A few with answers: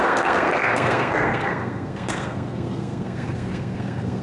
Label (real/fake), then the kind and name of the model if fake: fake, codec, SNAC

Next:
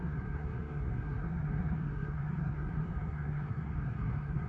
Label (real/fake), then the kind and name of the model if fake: fake, codec, SNAC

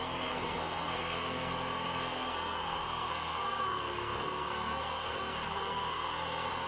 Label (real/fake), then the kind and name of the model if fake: fake, codec, SNAC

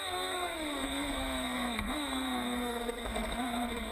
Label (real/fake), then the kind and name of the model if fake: fake, codec, SNAC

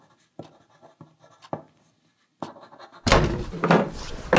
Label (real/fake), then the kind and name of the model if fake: real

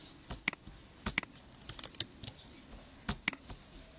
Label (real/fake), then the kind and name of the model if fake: real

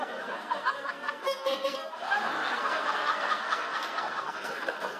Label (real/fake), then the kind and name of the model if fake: fake, codec, SNAC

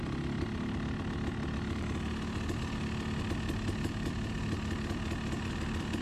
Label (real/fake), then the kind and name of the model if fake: real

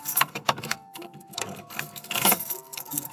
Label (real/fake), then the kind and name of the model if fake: fake, codec, SNAC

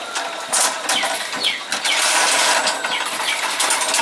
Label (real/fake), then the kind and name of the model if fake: real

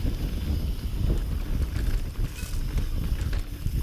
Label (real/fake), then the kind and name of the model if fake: real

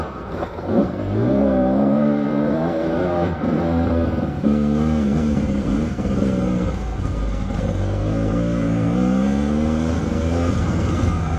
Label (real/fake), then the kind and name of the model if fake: fake, codec, SNAC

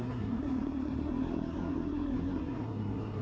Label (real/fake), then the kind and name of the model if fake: fake, codec, SNAC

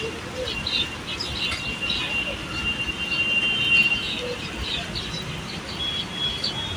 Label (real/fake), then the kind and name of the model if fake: real